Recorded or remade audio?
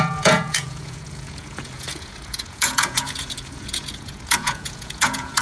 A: remade